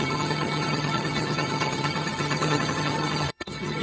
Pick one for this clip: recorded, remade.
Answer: remade